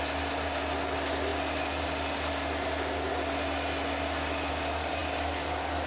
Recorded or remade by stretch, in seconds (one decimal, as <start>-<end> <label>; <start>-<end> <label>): 0.0-5.9 recorded